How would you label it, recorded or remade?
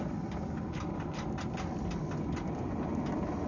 recorded